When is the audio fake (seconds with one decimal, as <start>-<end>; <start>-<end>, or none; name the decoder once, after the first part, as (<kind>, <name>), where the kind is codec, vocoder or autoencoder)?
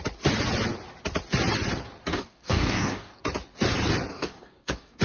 2.1-3.2 (codec, DAC); 4.1-5.0